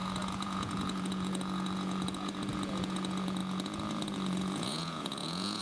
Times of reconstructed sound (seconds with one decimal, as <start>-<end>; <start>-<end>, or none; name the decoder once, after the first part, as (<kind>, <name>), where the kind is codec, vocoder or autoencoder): 0.0-5.6 (vocoder, Vocos)